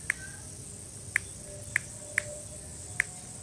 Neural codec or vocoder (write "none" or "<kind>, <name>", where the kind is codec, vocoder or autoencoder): none